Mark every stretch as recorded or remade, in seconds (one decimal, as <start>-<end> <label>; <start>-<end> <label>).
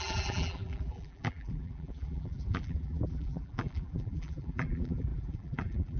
0.0-6.0 remade